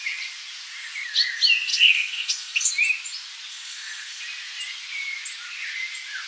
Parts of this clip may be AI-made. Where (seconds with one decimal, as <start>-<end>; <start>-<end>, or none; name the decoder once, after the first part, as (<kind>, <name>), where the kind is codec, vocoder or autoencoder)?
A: 1.7-2.7 (codec, SNAC); 3.5-4.2

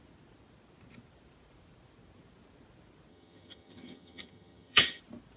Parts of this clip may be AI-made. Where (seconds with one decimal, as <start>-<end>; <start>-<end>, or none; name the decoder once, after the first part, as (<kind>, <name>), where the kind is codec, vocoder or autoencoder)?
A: 3.1-5.0 (vocoder, HiFi-GAN)